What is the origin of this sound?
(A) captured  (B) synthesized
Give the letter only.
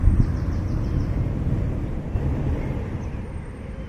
A